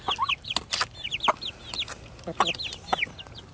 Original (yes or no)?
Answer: yes